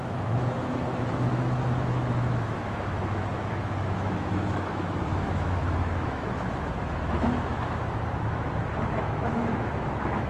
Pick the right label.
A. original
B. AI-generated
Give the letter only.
B